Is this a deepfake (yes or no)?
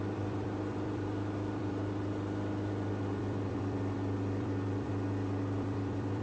yes